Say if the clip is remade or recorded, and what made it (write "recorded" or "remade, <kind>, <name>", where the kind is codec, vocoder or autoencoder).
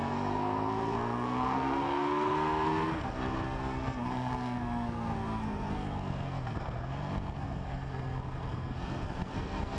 remade, codec, SNAC